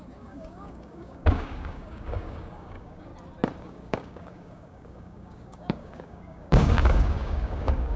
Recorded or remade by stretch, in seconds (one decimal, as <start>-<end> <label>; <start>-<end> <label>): 0.0-3.1 remade; 3.1-3.6 recorded; 3.6-8.0 remade